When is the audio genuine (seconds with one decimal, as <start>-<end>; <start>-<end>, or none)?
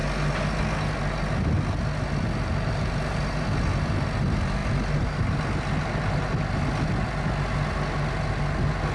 0.0-8.9